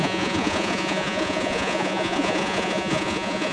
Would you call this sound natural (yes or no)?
no